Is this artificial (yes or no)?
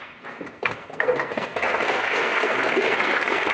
yes